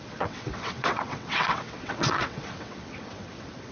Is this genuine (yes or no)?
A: no